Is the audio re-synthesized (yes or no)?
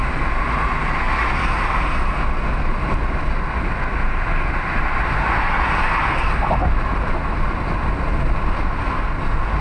no